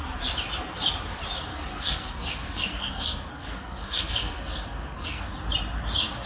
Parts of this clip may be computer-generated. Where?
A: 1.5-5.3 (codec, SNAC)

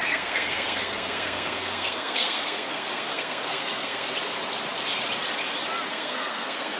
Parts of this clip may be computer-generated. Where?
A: 0.0-4.1 (codec, SNAC); 5.9-6.8

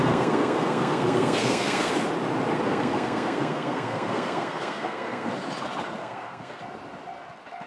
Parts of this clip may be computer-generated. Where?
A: 0.0-1.9 (codec, SNAC); 2.5-5.3; 6.0-6.6

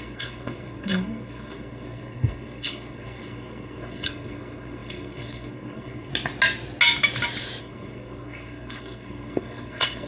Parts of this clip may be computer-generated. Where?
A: 0.0-6.1 (codec, SNAC); 7.6-10.1

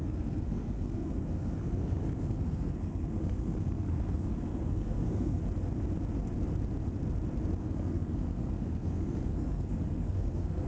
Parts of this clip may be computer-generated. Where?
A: 0.0-5.4 (codec, SNAC); 7.6-10.7

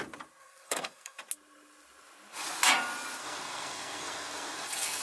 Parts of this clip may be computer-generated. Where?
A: 0.4-1.2 (codec, SNAC); 3.2-5.0